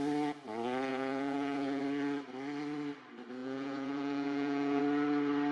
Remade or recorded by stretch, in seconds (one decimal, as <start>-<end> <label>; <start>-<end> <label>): 0.0-0.9 recorded; 0.9-1.8 remade; 1.8-3.4 recorded; 3.4-4.8 remade; 4.8-5.5 recorded